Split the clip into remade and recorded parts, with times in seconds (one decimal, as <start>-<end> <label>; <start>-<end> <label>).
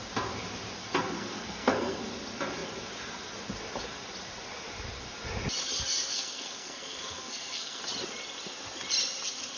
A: 0.0-0.8 recorded; 0.8-2.0 remade; 2.0-6.1 recorded; 6.1-7.8 remade; 7.8-9.6 recorded